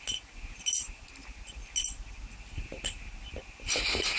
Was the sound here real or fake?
real